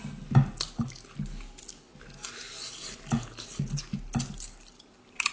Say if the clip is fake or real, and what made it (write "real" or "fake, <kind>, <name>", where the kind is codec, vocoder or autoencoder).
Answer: real